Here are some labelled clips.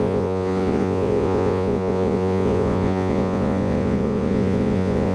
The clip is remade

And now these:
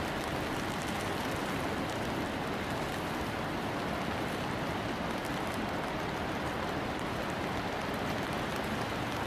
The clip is recorded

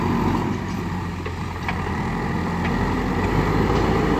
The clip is recorded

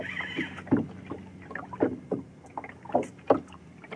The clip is recorded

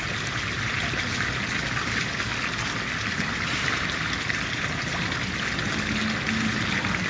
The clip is recorded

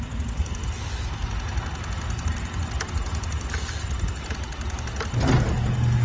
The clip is recorded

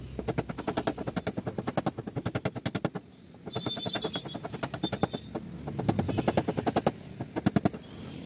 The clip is recorded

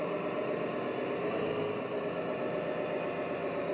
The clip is recorded